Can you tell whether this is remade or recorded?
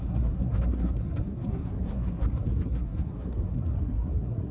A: remade